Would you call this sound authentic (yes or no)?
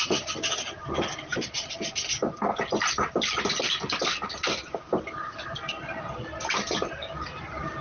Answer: yes